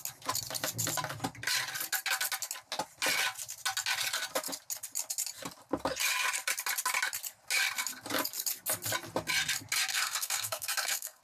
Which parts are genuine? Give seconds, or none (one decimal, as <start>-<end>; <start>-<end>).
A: 0.0-9.9